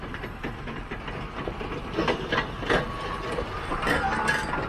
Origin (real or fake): real